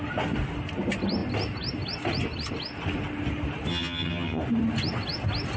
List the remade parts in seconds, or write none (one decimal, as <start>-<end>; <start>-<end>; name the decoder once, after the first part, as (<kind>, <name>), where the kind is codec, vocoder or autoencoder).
3.7-4.4 (vocoder, HiFi-GAN)